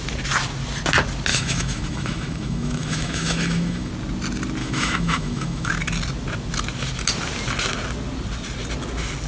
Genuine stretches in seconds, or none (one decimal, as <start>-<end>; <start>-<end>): 0.0-1.3; 3.9-4.6; 5.7-9.3